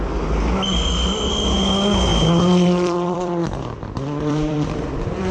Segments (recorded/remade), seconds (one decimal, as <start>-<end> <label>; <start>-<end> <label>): 0.0-2.1 recorded; 2.1-5.3 remade

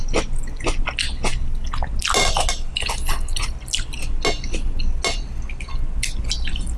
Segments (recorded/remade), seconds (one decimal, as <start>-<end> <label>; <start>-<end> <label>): 0.0-6.8 recorded

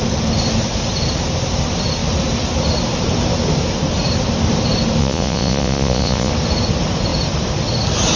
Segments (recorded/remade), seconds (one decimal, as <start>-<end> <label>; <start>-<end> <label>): 0.0-5.0 recorded; 5.0-6.3 remade; 6.3-8.2 recorded

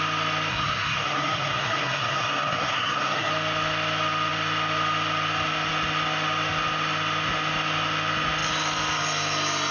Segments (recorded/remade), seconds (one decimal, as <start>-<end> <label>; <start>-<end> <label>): 0.0-0.5 recorded; 0.5-3.3 remade; 3.3-9.7 recorded

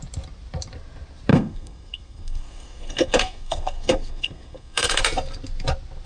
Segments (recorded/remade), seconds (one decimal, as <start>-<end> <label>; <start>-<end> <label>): 0.0-1.3 recorded; 1.3-5.0 remade; 5.0-6.1 recorded

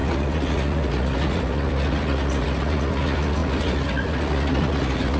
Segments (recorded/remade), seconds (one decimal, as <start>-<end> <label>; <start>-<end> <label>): 0.0-5.2 remade

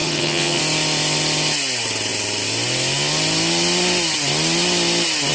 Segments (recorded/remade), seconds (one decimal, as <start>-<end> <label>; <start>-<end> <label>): 0.0-0.6 remade; 0.6-5.3 recorded